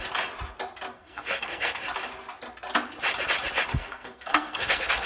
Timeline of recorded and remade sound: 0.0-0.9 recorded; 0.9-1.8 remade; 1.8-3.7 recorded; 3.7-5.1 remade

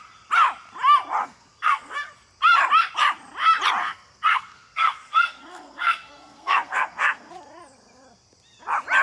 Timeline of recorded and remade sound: 0.0-1.2 recorded; 1.2-2.1 remade; 2.1-3.8 recorded; 3.8-7.3 remade; 7.3-9.0 recorded

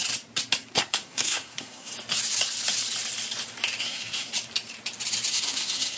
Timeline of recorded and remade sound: 0.0-0.7 recorded; 0.7-1.9 remade; 1.9-3.8 recorded; 3.8-4.3 remade; 4.3-5.3 recorded; 5.3-6.0 remade

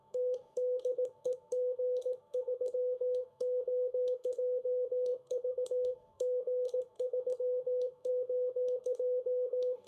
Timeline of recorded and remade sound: 0.0-9.9 remade